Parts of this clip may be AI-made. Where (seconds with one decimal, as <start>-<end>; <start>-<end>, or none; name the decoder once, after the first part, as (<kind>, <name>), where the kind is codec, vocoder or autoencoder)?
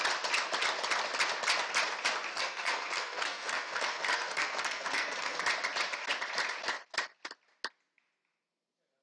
2.3-5.4 (codec, SNAC)